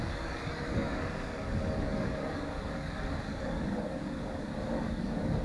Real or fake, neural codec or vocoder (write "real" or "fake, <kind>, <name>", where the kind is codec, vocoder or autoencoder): fake, codec, DAC